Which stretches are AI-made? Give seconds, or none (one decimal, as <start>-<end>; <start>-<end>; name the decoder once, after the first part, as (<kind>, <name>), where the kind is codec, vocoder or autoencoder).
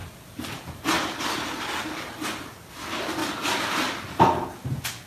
3.2-3.7 (vocoder, BigVGAN v2)